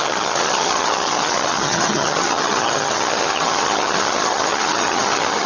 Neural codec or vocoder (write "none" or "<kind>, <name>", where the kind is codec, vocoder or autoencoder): vocoder, HiFi-GAN